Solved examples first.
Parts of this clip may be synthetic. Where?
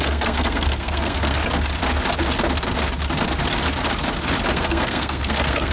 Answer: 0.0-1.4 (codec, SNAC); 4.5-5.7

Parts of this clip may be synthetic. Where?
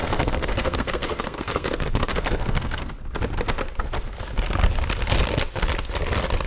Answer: 0.0-2.9 (codec, SNAC)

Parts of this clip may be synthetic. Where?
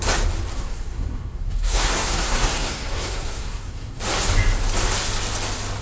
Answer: 0.5-4.0 (codec, SNAC)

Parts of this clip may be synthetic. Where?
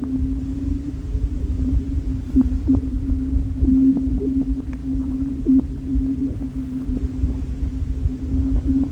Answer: 0.5-3.1 (vocoder, BigVGAN v2); 4.8-5.3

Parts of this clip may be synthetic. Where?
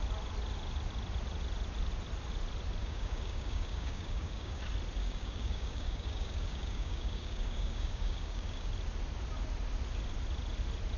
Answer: 2.8-4.6 (codec, DAC); 5.0-8.7